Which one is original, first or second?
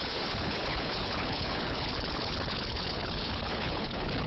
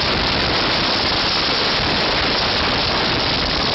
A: second